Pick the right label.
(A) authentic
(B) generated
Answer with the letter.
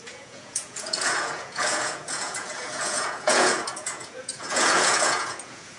B